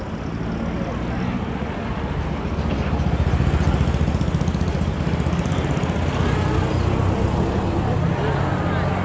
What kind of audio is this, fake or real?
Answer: real